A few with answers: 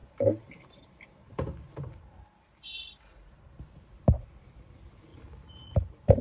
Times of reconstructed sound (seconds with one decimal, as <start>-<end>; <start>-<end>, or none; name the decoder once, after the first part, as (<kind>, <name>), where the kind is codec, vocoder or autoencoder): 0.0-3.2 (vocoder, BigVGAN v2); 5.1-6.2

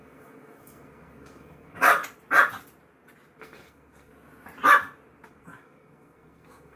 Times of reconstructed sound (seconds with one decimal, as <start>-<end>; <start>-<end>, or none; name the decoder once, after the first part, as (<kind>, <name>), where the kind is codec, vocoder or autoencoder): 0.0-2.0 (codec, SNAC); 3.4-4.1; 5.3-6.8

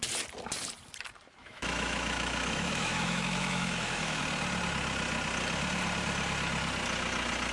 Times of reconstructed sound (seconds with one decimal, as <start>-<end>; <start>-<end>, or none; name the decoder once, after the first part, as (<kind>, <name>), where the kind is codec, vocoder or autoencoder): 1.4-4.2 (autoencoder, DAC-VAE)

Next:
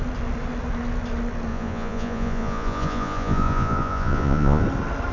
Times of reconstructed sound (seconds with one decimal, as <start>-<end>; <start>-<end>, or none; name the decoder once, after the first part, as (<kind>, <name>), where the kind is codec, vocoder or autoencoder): 1.5-4.6 (vocoder, Vocos)

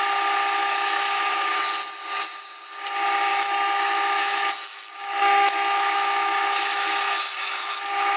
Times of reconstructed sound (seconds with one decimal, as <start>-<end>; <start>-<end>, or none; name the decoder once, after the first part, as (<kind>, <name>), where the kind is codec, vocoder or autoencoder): 0.6-1.6 (autoencoder, DAC-VAE); 3.3-8.2

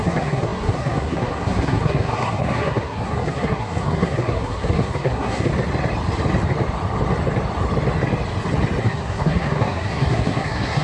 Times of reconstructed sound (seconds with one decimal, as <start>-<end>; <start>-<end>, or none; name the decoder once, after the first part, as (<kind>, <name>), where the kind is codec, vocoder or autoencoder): 0.0-5.5 (codec, SNAC); 8.8-10.8

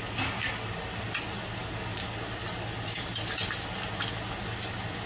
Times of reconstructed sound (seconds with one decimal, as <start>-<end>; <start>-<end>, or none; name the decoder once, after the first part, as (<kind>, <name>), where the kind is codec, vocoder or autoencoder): none